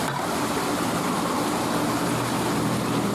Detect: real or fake real